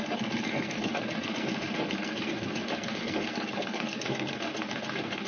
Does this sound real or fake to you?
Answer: fake